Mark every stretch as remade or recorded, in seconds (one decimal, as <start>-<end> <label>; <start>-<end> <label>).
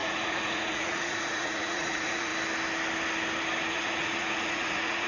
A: 0.0-2.3 remade; 2.3-3.7 recorded; 3.7-5.1 remade